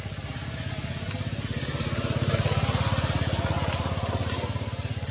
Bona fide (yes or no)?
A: yes